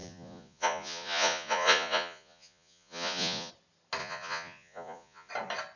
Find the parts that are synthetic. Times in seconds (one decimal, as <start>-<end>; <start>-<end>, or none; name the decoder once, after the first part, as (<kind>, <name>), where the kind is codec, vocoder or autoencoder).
0.0-3.5 (vocoder, Vocos); 4.0-5.3